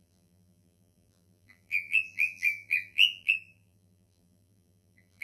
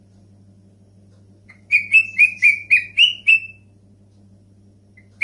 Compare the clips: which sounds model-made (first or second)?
first